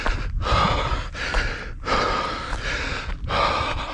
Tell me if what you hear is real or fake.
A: real